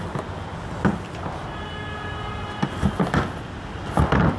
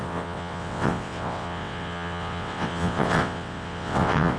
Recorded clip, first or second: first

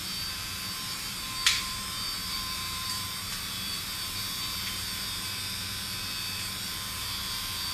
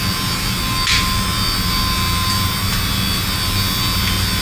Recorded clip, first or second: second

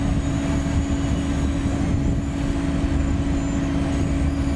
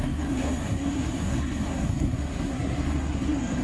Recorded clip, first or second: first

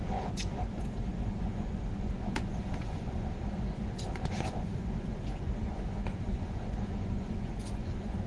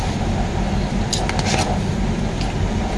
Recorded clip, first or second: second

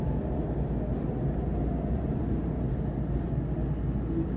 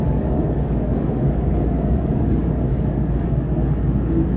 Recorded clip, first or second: first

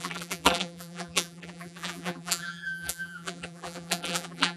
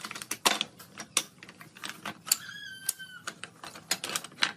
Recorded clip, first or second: second